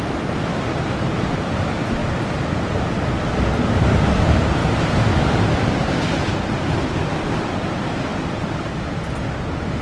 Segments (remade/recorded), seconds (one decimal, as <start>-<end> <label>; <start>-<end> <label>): 0.0-2.0 recorded; 2.0-3.3 remade; 3.3-4.6 recorded; 4.6-6.0 remade; 6.0-9.8 recorded